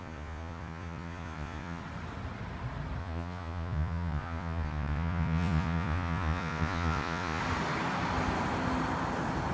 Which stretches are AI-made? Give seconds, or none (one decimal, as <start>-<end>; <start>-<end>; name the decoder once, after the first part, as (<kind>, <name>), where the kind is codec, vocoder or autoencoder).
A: 0.0-1.8 (vocoder, Vocos); 3.0-7.4